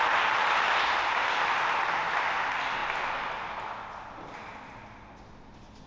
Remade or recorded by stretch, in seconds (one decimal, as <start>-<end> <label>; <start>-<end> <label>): 0.0-5.9 recorded